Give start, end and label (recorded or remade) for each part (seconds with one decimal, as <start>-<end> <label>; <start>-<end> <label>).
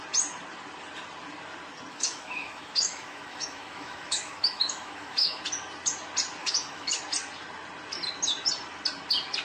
0.0-1.9 recorded; 1.9-5.4 remade; 5.4-6.4 recorded; 6.4-7.0 remade; 7.0-9.4 recorded